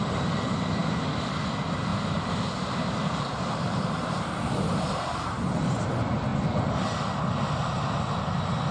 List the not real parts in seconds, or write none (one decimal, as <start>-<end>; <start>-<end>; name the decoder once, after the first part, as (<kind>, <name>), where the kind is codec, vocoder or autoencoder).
1.9-5.8 (vocoder, BigVGAN v2)